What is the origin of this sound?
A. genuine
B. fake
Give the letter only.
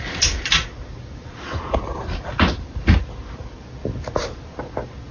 A